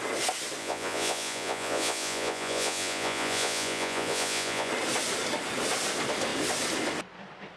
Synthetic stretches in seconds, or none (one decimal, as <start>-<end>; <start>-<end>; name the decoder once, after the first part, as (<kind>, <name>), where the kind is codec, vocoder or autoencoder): 0.6-4.7 (vocoder, Vocos)